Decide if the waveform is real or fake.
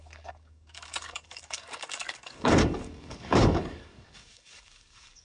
fake